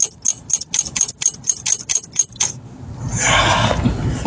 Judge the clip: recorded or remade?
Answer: recorded